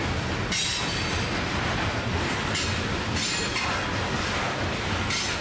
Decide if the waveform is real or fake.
real